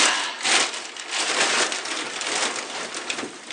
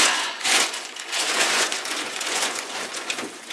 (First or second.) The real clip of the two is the first